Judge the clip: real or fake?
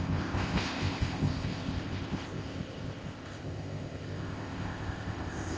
fake